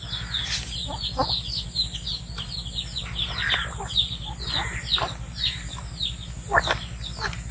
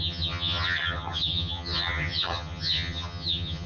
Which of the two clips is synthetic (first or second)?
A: second